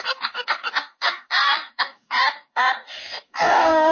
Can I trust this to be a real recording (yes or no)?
no